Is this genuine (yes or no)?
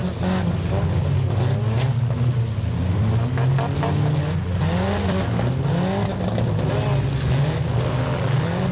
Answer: yes